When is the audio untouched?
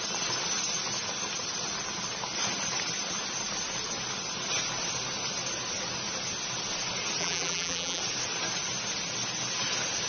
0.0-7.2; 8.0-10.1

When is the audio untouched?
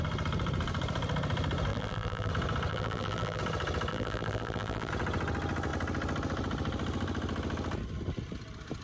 0.0-1.7; 2.3-2.7; 3.4-3.9; 4.9-8.8